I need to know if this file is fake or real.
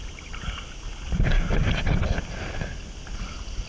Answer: real